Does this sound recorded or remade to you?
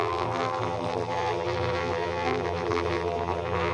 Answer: remade